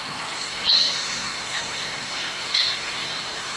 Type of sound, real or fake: fake